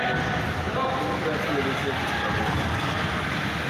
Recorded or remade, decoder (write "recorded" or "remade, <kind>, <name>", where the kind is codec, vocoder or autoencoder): recorded